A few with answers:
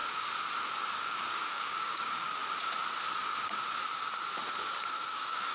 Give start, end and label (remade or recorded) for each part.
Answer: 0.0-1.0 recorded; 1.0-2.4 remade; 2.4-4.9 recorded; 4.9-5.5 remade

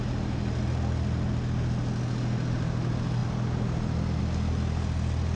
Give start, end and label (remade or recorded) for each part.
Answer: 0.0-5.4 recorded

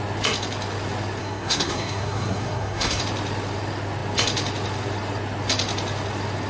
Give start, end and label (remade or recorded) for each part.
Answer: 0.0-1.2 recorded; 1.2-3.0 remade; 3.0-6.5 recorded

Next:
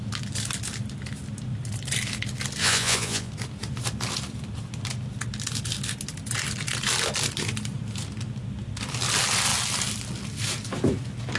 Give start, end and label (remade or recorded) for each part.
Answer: 0.0-2.6 recorded; 2.6-3.3 remade; 3.3-11.4 recorded